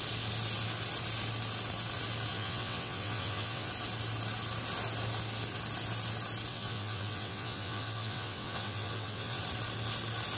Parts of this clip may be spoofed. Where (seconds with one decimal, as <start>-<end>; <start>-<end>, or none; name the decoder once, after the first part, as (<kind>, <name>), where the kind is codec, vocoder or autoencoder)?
2.3-3.7 (vocoder, WaveNeXt); 6.5-9.4